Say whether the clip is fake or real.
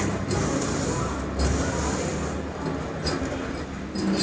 real